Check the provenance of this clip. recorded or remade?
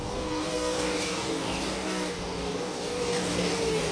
remade